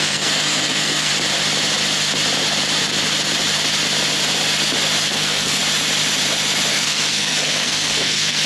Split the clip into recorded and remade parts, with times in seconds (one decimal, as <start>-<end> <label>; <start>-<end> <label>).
0.0-1.1 remade; 1.1-5.0 recorded; 5.0-5.6 remade; 5.6-6.7 recorded; 6.7-8.5 remade